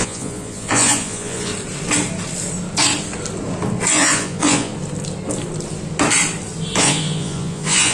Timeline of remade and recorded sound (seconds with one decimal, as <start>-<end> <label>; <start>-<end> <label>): 0.0-1.5 remade; 1.5-3.9 recorded; 3.9-4.7 remade; 4.7-6.8 recorded; 6.8-7.9 remade